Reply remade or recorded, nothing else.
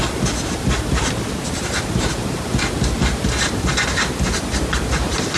recorded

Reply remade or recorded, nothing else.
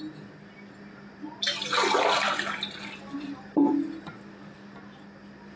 recorded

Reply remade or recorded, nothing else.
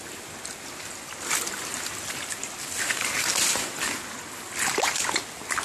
recorded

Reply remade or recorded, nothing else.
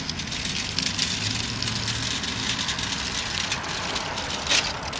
recorded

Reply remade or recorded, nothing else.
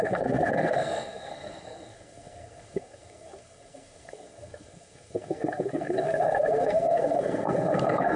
remade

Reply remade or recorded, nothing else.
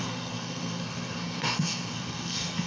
remade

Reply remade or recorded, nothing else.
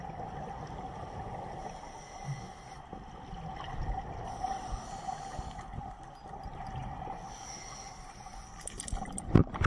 recorded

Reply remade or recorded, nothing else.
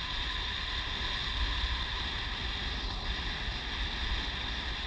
recorded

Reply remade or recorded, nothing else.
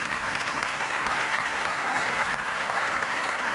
remade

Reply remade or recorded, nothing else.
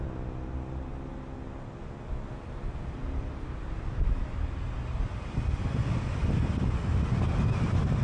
recorded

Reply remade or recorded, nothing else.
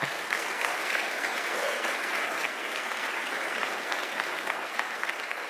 remade